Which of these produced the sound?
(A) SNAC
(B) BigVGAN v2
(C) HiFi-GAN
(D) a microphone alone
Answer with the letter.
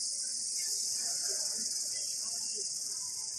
D